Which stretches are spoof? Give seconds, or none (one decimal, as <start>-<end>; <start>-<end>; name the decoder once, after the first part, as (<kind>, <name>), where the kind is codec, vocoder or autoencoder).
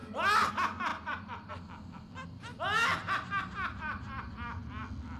0.9-1.5 (vocoder, BigVGAN v2)